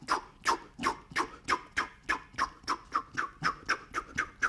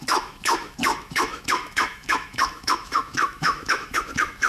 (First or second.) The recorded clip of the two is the first